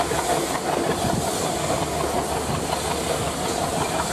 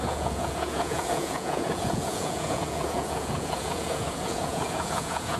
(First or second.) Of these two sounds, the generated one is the second